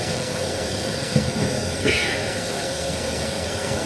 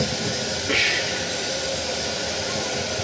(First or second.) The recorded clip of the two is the second